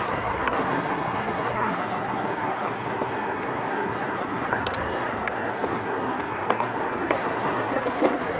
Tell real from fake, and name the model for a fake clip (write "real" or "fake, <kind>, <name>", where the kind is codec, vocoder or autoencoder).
fake, codec, SNAC